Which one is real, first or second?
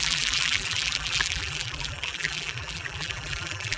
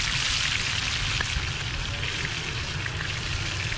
second